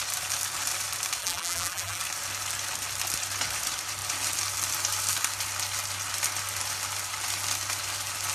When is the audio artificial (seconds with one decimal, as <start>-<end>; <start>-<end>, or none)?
1.2-2.0